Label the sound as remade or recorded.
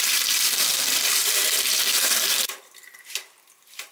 remade